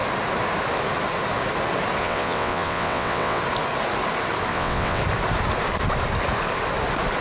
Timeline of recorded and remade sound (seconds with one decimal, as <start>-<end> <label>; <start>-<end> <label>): 0.0-2.0 recorded; 2.0-3.4 remade; 3.4-4.5 recorded; 4.5-5.0 remade; 5.0-7.2 recorded